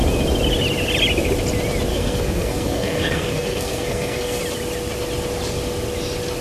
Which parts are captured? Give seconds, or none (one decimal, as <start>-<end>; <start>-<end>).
0.0-1.9; 4.4-6.4

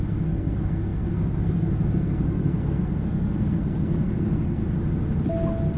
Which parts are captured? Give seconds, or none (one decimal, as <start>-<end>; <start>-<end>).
4.6-5.8